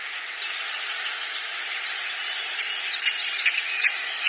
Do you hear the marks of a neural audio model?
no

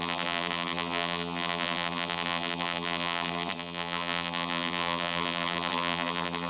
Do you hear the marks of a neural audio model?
yes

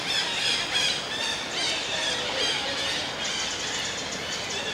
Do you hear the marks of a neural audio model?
no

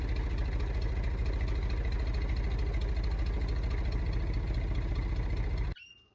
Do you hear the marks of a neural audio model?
no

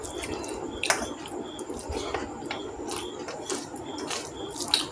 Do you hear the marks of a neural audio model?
no